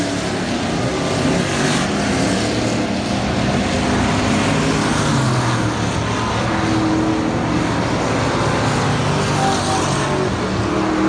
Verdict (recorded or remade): recorded